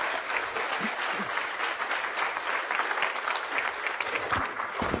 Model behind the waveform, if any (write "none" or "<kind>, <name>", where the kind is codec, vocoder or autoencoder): none